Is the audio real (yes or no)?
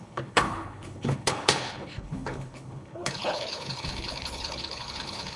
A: no